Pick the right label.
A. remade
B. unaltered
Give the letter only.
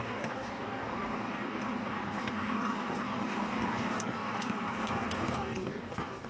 A